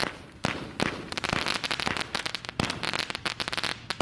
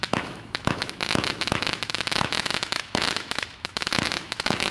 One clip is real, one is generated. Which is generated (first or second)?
second